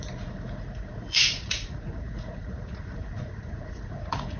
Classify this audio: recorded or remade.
remade